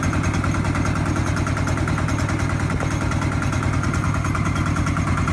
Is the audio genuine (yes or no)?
yes